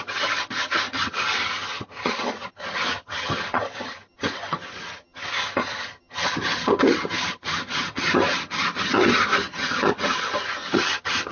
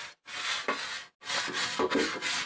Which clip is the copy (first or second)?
first